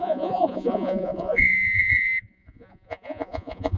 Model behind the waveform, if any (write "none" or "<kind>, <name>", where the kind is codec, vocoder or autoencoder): vocoder, Vocos